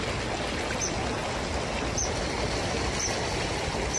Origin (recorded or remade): recorded